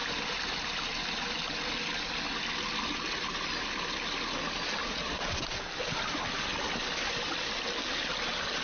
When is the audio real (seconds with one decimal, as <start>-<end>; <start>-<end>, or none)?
0.0-4.8; 5.6-8.6